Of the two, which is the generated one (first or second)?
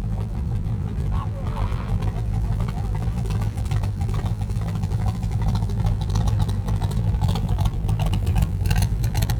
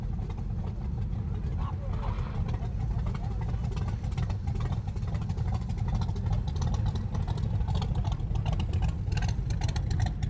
first